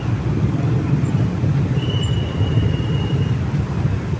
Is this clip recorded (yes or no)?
yes